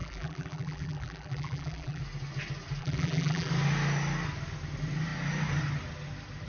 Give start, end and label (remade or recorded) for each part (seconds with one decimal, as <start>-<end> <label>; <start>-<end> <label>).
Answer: 0.0-2.0 remade; 2.0-2.8 recorded; 2.8-3.5 remade; 3.5-6.5 recorded